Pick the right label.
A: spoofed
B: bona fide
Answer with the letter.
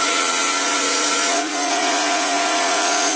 A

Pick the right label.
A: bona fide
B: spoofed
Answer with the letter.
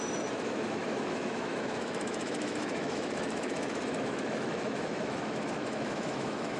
B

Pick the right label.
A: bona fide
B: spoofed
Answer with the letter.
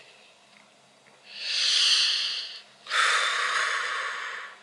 A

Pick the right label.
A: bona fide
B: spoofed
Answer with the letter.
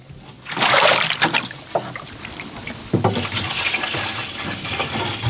A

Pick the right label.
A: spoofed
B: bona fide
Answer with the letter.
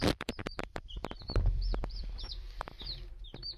A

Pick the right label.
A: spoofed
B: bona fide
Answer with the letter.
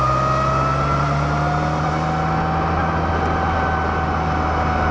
B